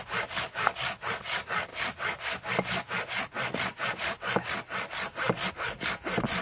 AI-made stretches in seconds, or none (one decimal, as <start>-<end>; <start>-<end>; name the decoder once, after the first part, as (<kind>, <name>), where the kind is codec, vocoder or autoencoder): none

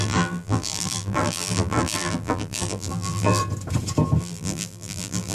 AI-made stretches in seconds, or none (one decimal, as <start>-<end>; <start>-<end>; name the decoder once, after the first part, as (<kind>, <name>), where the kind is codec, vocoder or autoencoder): 0.0-3.4 (vocoder, BigVGAN v2); 4.2-5.3

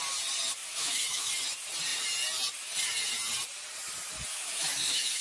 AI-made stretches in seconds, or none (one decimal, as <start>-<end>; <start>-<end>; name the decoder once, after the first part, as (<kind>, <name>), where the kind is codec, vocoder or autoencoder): 0.6-1.3 (autoencoder, DAC-VAE); 4.3-5.2